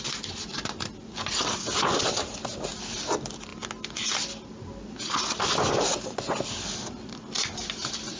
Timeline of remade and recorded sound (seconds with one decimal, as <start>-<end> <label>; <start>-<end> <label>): 0.0-8.2 recorded